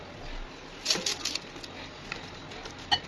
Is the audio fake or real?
real